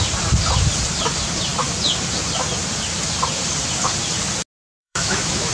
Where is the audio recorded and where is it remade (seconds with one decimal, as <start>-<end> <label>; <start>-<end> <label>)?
0.0-4.7 recorded; 4.7-5.5 remade